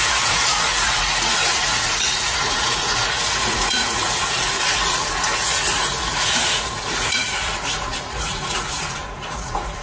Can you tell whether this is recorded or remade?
remade